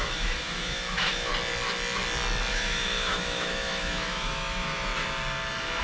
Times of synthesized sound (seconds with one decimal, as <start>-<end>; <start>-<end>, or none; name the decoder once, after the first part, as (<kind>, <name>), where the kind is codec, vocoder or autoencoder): 0.0-1.3 (autoencoder, DAC-VAE); 2.5-4.9